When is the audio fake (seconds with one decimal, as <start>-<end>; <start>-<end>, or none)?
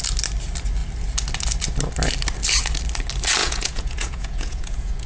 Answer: 3.4-5.1